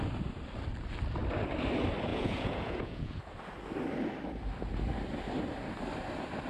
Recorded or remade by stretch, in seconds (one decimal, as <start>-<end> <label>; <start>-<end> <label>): 0.0-2.1 recorded; 2.1-3.2 remade; 3.2-6.5 recorded